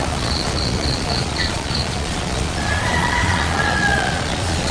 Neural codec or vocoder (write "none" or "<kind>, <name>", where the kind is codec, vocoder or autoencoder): vocoder, Vocos